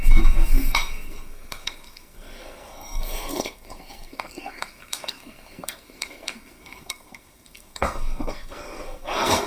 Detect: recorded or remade remade